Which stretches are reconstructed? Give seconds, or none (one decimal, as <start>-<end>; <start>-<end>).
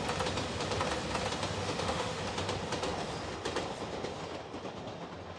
1.6-2.2